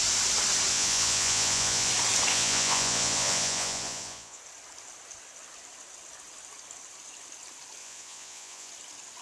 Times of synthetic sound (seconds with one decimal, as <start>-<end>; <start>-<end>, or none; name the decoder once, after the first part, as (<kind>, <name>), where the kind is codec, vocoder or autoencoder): 0.7-1.9 (vocoder, Vocos); 2.3-4.4; 7.8-8.7